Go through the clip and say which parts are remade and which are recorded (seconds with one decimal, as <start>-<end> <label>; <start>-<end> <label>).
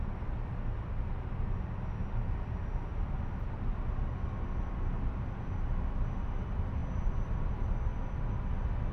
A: 0.0-6.8 recorded; 6.8-7.5 remade; 7.5-7.9 recorded; 7.9-8.5 remade; 8.5-8.9 recorded